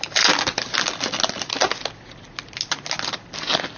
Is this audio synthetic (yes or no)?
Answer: no